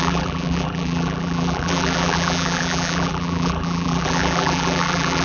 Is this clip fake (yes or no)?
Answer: yes